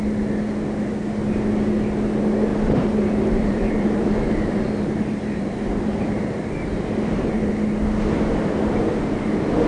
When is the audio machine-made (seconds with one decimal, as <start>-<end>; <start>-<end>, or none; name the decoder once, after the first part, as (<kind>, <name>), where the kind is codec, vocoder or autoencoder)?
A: 2.5-7.5 (vocoder, BigVGAN v2)